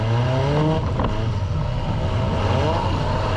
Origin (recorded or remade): recorded